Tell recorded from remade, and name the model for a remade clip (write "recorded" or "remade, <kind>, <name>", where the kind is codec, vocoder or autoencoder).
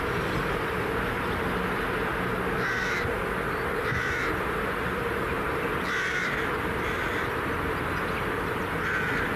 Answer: recorded